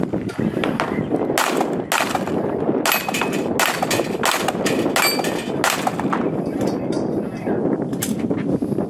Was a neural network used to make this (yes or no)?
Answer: no